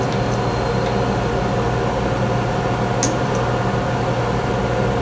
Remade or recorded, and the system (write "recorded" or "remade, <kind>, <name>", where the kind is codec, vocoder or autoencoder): recorded